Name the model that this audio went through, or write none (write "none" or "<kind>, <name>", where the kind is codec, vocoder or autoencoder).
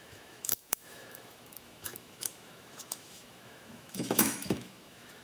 autoencoder, DAC-VAE